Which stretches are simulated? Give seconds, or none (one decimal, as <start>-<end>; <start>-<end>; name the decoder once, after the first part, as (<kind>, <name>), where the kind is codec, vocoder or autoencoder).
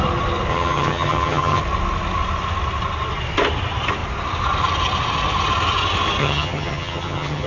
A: 0.5-1.6 (vocoder, HiFi-GAN); 6.2-7.5